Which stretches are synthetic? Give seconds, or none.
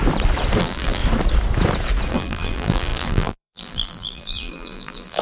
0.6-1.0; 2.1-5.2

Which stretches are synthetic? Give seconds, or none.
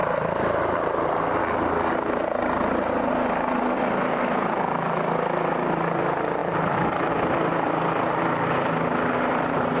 0.0-1.4; 6.4-7.1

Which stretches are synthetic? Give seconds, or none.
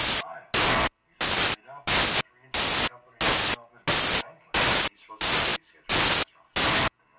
none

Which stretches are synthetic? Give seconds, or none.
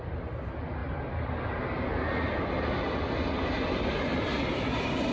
4.1-4.6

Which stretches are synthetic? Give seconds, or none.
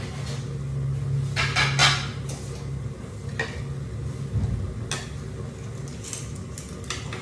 none